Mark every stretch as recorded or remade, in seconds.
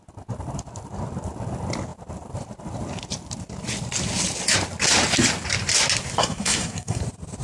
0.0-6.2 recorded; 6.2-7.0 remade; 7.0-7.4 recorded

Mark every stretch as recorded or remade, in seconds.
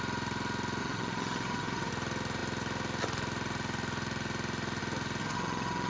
0.0-0.8 recorded; 0.8-1.9 remade; 1.9-5.2 recorded; 5.2-5.9 remade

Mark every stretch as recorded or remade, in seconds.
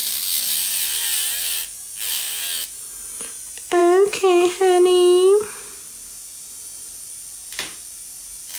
0.0-8.6 recorded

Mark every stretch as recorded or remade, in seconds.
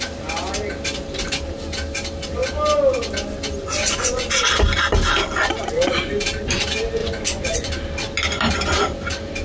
0.0-3.8 recorded; 3.8-4.4 remade; 4.4-7.0 recorded; 7.0-7.7 remade; 7.7-9.4 recorded